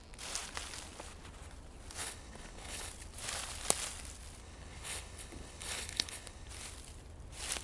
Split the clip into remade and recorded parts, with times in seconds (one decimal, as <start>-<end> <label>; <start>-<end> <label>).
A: 0.0-2.0 recorded; 2.0-2.9 remade; 2.9-4.4 recorded; 4.4-6.5 remade; 6.5-7.6 recorded